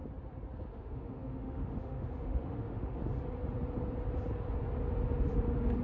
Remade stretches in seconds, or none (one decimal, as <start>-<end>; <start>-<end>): 0.7-3.0